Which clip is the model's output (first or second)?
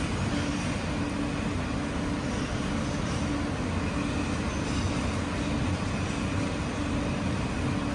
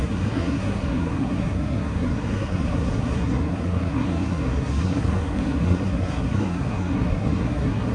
second